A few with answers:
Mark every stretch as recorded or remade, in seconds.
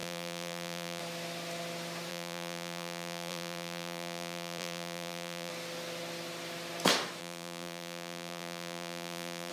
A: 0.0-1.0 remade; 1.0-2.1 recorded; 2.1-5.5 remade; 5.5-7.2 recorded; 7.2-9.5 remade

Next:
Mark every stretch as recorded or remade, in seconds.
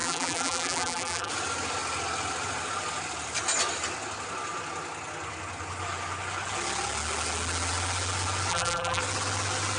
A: 0.0-1.3 remade; 1.3-8.5 recorded; 8.5-9.0 remade; 9.0-9.8 recorded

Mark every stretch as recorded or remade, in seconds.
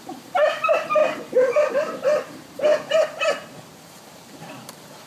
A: 0.0-1.0 remade; 1.0-1.7 recorded; 1.7-2.7 remade; 2.7-3.8 recorded; 3.8-5.1 remade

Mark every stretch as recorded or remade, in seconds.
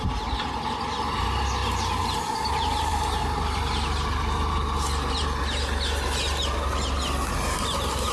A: 0.0-2.9 recorded; 2.9-5.4 remade; 5.4-8.1 recorded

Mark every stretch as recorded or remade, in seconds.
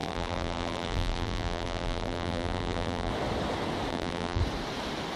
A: 0.0-3.1 remade; 3.1-3.9 recorded; 3.9-4.4 remade; 4.4-5.2 recorded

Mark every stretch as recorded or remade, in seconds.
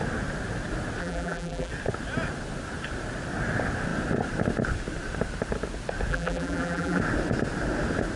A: 0.0-1.0 recorded; 1.0-1.7 remade; 1.7-6.1 recorded; 6.1-7.0 remade; 7.0-8.2 recorded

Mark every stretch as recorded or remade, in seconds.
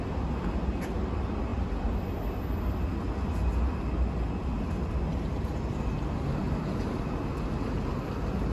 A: 0.0-8.5 recorded